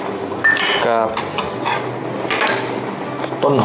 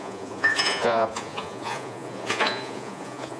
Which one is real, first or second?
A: first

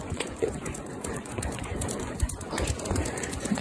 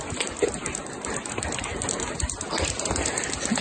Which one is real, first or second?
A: second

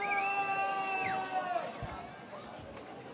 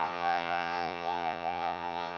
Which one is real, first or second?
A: first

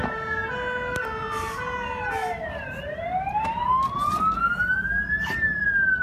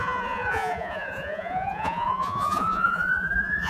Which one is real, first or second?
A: first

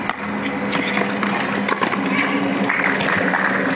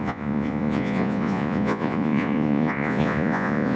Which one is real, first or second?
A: first